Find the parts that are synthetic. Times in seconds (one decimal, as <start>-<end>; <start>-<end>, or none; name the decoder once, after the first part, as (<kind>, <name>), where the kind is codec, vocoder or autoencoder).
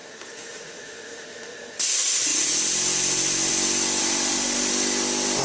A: 0.0-1.8 (autoencoder, DAC-VAE); 4.0-4.7